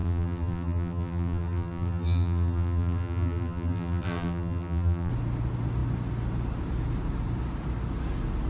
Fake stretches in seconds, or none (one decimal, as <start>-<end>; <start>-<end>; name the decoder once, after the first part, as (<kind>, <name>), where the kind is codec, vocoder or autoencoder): 0.0-5.1 (vocoder, BigVGAN v2)